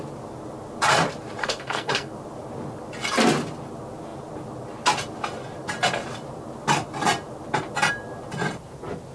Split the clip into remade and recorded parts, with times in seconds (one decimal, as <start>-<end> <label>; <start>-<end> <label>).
0.0-1.4 recorded; 1.4-2.1 remade; 2.1-9.1 recorded